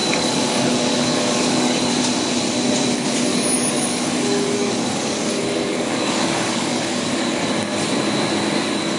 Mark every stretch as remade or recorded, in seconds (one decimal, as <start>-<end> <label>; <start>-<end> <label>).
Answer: 0.0-1.9 remade; 1.9-3.3 recorded; 3.3-7.5 remade; 7.5-9.0 recorded